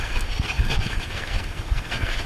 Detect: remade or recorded remade